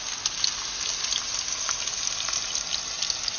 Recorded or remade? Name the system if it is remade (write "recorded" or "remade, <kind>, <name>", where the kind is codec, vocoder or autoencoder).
recorded